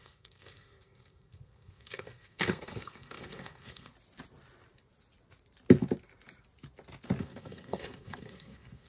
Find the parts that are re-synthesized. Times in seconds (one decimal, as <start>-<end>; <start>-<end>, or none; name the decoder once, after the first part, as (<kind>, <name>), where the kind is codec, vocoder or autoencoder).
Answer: 0.0-3.9 (codec, SNAC); 7.2-8.9